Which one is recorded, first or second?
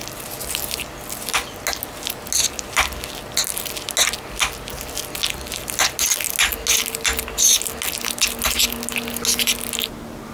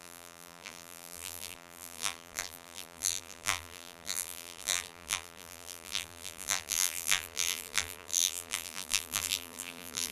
first